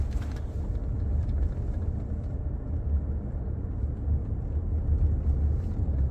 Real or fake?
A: real